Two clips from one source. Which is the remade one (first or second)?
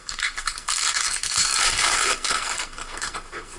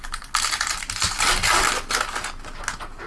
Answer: first